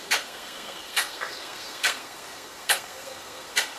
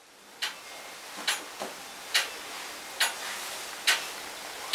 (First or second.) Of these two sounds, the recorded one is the second